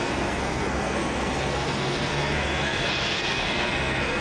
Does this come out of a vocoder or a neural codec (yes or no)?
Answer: yes